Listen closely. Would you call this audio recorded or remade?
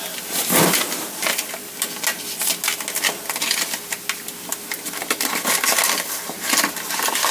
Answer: recorded